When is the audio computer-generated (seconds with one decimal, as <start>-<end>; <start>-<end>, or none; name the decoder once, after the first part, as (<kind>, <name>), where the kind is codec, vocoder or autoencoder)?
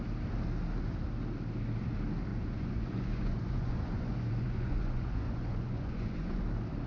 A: 2.3-6.4 (vocoder, Vocos)